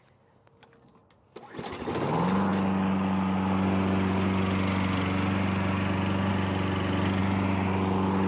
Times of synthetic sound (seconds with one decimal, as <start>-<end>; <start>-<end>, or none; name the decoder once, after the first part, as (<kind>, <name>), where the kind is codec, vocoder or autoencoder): none